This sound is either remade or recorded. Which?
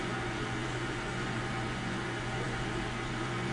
remade